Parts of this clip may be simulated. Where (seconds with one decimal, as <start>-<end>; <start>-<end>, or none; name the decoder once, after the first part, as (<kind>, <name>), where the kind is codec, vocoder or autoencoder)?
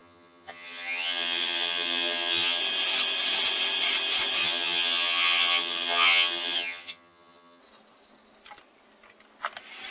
0.0-2.6 (vocoder, HiFi-GAN); 4.4-7.6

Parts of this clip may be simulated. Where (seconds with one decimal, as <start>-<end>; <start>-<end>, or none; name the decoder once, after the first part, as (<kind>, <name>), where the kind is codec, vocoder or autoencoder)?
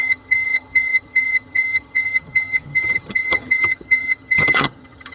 0.0-5.1 (vocoder, HiFi-GAN)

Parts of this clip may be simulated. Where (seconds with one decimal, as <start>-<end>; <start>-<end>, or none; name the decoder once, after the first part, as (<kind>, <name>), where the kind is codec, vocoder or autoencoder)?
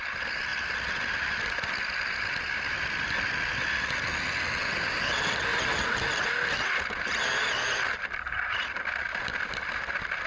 none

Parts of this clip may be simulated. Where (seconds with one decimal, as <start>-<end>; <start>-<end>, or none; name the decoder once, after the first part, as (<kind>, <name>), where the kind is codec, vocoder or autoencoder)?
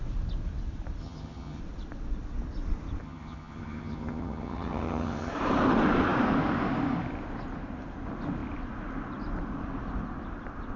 1.0-1.6 (vocoder, HiFi-GAN); 3.0-5.3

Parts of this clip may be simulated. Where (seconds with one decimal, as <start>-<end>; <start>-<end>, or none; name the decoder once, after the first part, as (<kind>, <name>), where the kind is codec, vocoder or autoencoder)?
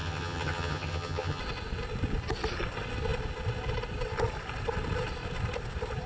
0.0-1.4 (vocoder, HiFi-GAN)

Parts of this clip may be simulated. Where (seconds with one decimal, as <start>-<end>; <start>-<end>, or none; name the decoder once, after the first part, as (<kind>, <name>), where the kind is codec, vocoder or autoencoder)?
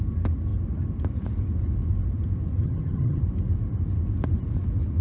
2.6-3.2 (vocoder, HiFi-GAN)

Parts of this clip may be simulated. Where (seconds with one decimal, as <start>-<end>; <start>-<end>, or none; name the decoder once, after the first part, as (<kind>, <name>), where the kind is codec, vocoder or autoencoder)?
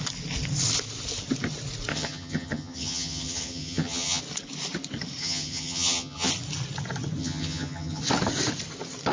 1.9-4.2 (vocoder, HiFi-GAN); 5.2-6.3; 7.2-8.0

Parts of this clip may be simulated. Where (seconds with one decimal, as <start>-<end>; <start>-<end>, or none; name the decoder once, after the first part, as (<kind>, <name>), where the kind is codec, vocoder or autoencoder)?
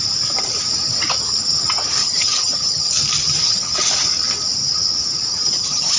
2.0-2.9 (vocoder, HiFi-GAN); 3.4-3.9; 5.3-6.0